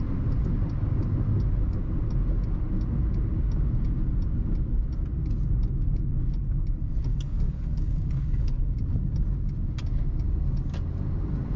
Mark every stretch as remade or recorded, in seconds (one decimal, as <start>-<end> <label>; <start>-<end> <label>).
0.0-7.1 recorded; 7.1-8.6 remade; 8.6-11.6 recorded